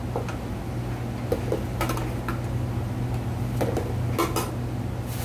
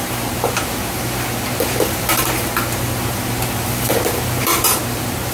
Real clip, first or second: first